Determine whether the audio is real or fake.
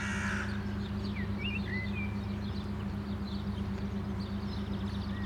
real